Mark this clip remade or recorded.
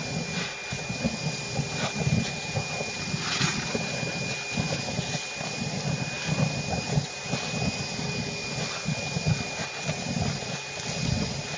recorded